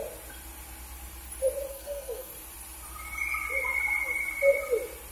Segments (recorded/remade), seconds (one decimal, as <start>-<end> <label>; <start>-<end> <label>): 0.0-1.7 recorded; 1.7-2.3 remade; 2.3-5.1 recorded